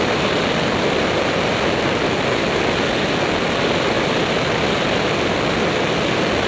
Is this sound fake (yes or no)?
no